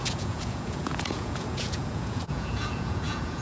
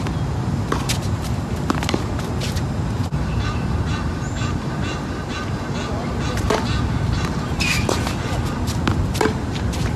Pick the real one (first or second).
second